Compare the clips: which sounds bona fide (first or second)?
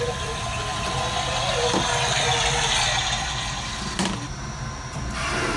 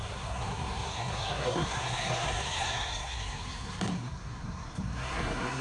first